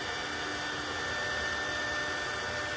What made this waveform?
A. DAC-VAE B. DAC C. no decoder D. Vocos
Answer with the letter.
C